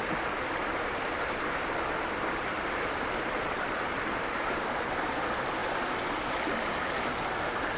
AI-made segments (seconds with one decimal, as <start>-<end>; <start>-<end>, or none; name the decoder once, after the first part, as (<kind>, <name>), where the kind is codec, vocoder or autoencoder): 0.6-4.6 (vocoder, BigVGAN v2)